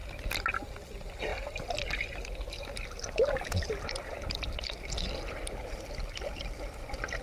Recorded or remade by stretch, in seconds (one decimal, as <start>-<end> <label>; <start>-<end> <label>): 0.0-7.2 recorded